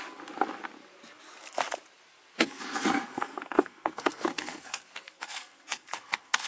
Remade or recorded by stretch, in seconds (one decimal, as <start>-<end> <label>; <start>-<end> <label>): 0.0-2.3 recorded; 2.3-6.5 remade